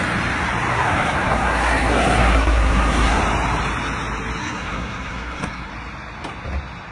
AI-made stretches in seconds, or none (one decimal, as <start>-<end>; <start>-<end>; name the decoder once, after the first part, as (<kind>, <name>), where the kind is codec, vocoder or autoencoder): 0.7-3.2 (codec, SNAC); 4.4-5.7